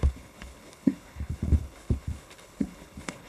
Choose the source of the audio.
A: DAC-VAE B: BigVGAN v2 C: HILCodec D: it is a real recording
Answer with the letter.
C